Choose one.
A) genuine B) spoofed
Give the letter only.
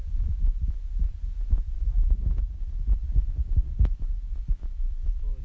A